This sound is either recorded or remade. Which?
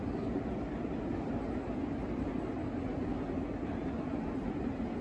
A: recorded